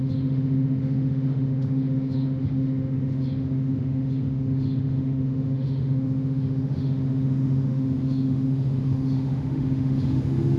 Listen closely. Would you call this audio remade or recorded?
remade